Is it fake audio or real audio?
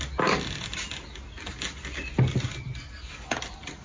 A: real